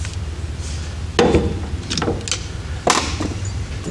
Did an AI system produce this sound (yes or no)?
no